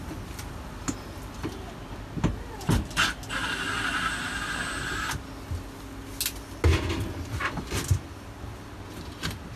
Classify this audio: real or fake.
real